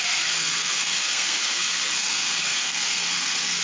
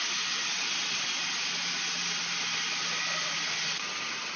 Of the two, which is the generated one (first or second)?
first